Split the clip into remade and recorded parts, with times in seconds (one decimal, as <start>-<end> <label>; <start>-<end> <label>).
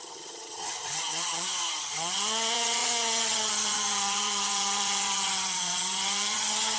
0.0-6.8 remade